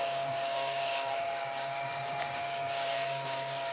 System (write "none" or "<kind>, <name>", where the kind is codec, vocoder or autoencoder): codec, DAC